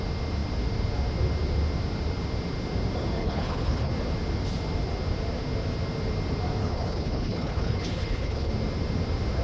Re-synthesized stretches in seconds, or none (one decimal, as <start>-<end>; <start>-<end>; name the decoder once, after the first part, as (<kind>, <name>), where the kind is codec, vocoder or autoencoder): 3.2-3.9 (codec, HILCodec); 6.6-8.5